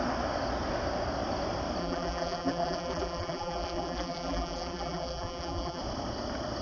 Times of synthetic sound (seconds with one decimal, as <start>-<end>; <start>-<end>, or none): 1.8-5.8